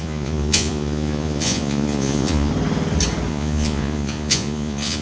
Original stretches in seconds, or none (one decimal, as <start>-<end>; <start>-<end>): 2.5-3.3